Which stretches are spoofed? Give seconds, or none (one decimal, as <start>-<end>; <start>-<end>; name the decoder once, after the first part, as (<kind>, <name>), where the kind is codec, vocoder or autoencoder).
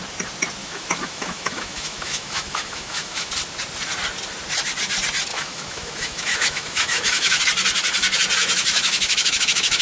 0.6-3.3 (autoencoder, DAC-VAE); 5.3-7.4; 8.4-9.8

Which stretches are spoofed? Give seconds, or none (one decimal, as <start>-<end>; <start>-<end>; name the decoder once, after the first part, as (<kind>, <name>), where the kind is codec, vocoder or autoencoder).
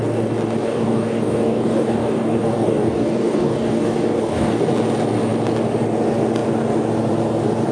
0.6-4.7 (codec, DAC)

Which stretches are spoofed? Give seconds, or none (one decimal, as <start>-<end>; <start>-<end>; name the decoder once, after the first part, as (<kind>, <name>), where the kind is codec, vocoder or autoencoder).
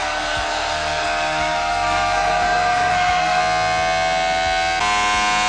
0.0-3.4 (codec, SNAC)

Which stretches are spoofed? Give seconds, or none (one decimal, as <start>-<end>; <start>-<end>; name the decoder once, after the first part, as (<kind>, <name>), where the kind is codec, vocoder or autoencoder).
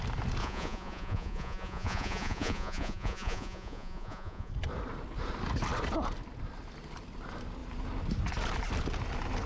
0.4-4.5 (vocoder, Vocos)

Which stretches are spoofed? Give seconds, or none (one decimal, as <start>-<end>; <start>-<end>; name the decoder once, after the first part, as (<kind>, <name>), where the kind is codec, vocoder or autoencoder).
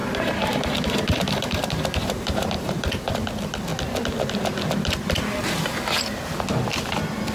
0.0-3.1 (vocoder, BigVGAN v2)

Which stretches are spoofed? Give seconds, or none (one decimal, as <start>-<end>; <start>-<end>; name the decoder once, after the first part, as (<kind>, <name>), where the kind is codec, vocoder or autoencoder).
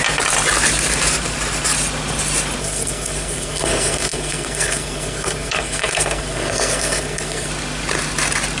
2.6-7.5 (codec, SNAC)